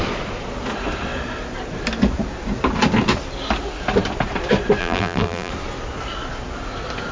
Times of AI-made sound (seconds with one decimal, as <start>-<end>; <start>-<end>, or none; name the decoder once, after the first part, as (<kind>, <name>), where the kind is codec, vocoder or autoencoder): 4.8-5.5 (vocoder, BigVGAN v2)